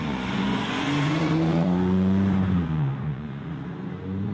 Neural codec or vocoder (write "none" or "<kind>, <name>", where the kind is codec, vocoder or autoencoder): vocoder, Vocos